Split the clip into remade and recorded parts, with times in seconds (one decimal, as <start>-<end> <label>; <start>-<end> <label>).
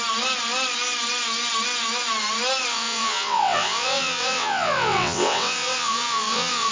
0.0-2.7 recorded; 2.7-6.7 remade